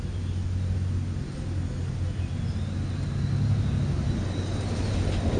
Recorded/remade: recorded